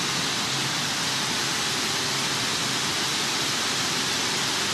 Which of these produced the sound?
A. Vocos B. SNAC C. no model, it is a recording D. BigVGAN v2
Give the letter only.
C